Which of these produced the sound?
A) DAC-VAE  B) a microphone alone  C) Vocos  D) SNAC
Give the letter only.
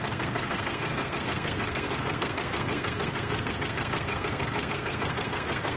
D